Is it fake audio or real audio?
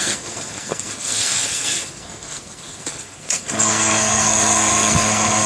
fake